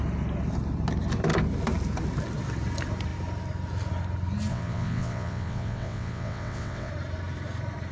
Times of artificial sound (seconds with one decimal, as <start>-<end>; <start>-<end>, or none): 4.5-6.9